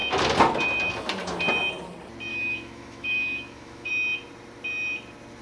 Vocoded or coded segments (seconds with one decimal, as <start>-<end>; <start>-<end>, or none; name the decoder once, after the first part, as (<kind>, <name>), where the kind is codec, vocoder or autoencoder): 2.3-3.9 (autoencoder, DAC-VAE)